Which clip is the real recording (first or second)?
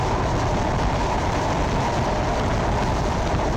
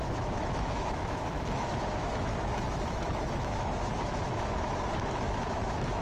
first